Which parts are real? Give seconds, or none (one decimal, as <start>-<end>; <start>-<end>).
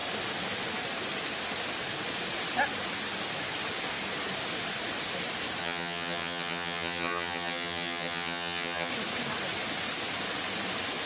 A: 0.0-5.6; 8.9-11.1